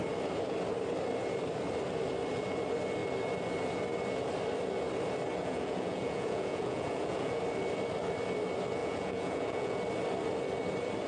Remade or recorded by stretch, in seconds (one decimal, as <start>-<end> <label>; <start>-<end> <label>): 0.0-5.4 recorded; 5.4-7.4 remade; 7.4-8.8 recorded; 8.8-9.8 remade; 9.8-11.1 recorded